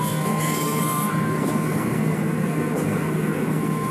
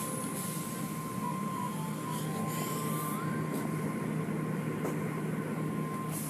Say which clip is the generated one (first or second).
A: first